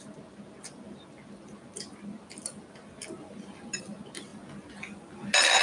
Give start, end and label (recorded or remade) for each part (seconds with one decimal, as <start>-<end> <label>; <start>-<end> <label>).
0.0-5.6 recorded